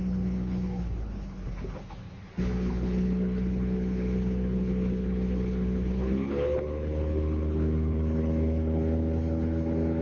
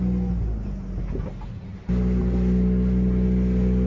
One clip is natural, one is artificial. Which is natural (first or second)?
second